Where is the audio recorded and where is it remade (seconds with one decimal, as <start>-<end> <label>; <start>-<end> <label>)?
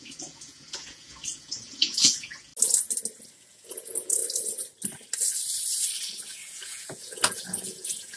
0.0-2.5 remade; 2.5-3.4 recorded; 3.4-4.2 remade; 4.2-6.3 recorded; 6.3-8.2 remade